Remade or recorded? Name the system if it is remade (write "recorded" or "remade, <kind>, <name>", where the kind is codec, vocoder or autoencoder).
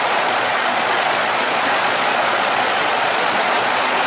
remade, vocoder, Vocos